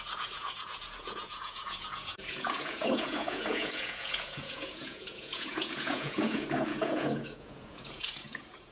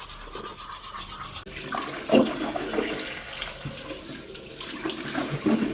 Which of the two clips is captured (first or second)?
second